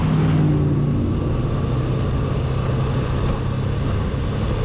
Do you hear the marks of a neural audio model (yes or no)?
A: no